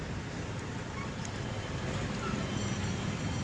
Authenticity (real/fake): real